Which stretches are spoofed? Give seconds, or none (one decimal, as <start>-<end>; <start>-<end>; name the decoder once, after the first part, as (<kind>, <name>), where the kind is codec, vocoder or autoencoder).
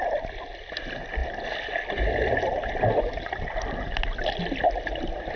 none